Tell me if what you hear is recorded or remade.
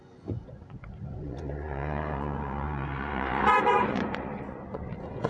remade